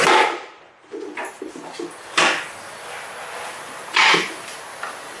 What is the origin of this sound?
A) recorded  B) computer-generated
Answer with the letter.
A